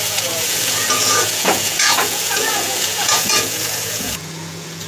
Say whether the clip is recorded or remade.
remade